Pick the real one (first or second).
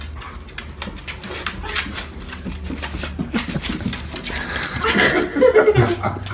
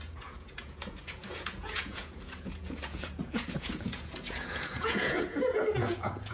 first